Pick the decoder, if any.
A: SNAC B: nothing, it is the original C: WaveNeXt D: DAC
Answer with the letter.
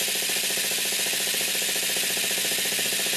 B